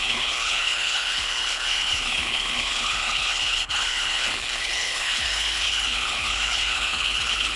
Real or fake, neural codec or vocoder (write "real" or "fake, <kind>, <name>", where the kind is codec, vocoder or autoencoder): fake, codec, HILCodec